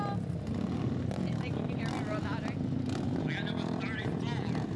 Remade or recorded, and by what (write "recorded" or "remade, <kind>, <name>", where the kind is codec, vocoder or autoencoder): recorded